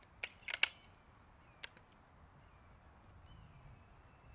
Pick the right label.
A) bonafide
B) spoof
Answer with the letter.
A